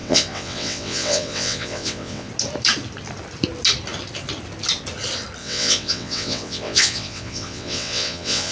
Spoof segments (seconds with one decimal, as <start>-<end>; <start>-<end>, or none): 0.0-2.3; 5.4-8.5